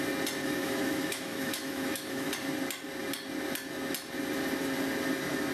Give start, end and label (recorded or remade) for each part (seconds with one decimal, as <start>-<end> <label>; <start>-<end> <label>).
0.0-0.4 recorded; 0.4-2.3 remade; 2.3-5.5 recorded

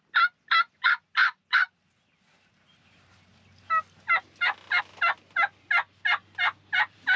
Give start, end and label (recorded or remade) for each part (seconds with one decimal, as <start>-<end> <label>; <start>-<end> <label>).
0.0-7.2 recorded

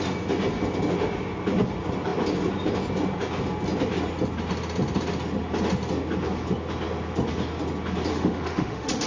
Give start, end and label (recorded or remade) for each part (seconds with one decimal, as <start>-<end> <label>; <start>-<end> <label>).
0.0-8.1 recorded; 8.1-9.1 remade

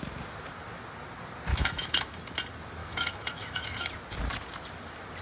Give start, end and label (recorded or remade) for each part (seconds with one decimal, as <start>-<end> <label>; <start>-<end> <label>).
0.0-1.5 recorded; 1.5-2.2 remade; 2.2-2.8 recorded; 2.8-3.9 remade; 3.9-5.2 recorded

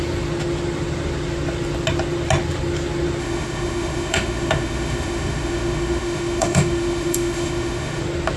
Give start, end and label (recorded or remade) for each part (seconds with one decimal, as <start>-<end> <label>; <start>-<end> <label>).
0.0-3.2 recorded; 3.2-8.0 remade; 8.0-8.4 recorded